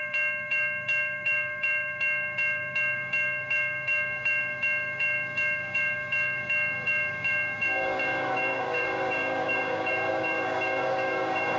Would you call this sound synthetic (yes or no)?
yes